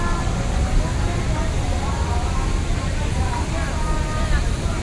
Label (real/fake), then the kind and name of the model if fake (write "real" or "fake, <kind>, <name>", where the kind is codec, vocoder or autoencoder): real